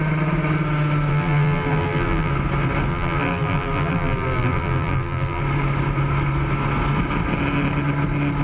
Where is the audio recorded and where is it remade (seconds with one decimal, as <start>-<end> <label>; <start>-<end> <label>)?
0.0-1.1 recorded; 1.1-2.3 remade; 2.3-2.9 recorded; 2.9-5.4 remade; 5.4-8.4 recorded